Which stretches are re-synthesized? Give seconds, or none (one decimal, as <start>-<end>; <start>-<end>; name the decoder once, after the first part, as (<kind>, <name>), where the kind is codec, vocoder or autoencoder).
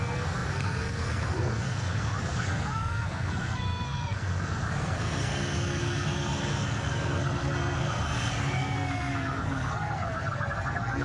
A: 0.0-11.0 (codec, SNAC)